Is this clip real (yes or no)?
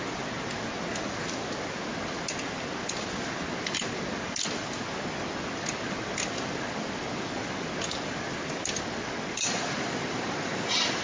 yes